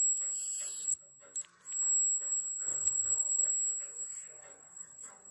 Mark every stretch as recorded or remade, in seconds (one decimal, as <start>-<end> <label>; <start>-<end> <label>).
0.0-2.7 recorded; 2.7-3.5 remade; 3.5-4.1 recorded; 4.1-5.3 remade